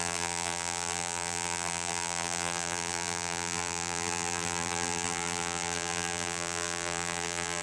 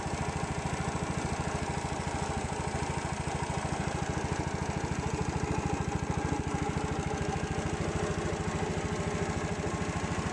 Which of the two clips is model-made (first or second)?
first